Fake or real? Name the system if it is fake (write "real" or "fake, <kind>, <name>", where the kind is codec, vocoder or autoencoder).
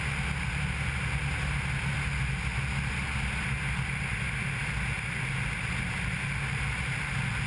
real